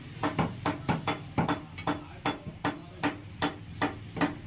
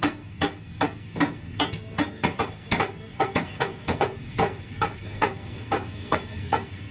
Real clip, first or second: first